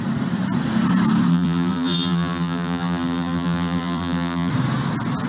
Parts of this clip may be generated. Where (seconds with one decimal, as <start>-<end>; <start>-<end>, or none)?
1.3-4.5